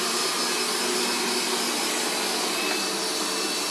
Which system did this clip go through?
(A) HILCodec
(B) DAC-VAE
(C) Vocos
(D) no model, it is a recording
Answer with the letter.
D